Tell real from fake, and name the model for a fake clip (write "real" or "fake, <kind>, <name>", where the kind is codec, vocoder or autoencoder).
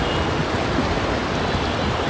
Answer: real